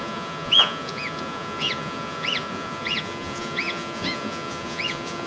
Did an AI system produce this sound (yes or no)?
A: yes